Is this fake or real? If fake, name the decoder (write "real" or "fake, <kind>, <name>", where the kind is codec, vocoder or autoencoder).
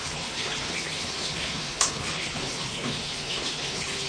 fake, codec, HILCodec